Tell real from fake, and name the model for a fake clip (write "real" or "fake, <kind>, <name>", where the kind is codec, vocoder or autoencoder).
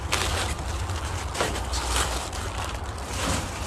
real